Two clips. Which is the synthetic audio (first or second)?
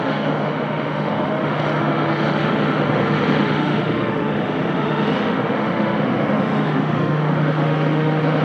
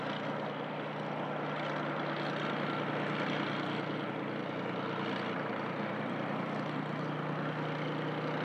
first